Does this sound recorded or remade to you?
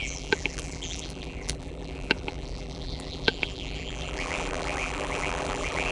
remade